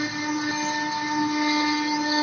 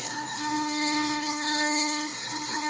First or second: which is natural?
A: first